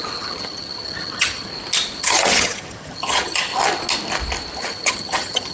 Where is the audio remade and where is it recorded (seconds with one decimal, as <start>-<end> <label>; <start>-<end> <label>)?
0.0-1.5 remade; 1.5-2.0 recorded; 2.0-3.5 remade; 3.5-4.6 recorded; 4.6-5.5 remade